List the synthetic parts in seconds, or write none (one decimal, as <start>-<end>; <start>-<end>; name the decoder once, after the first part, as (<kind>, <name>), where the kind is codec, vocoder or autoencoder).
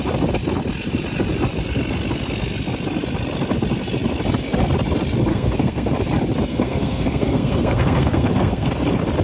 5.3-5.9 (codec, SNAC); 6.5-8.7